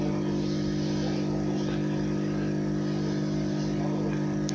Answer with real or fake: real